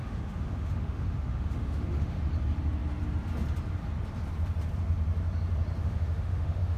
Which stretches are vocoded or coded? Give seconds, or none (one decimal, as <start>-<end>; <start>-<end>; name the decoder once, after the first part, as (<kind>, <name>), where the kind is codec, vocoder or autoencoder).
0.0-2.2 (autoencoder, DAC-VAE); 5.8-6.8